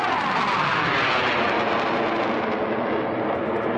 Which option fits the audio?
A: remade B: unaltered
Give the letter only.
B